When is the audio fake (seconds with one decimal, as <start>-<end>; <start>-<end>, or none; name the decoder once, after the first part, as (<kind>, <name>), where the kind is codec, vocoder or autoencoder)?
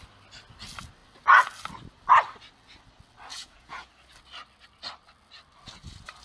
3.3-3.9 (vocoder, Vocos)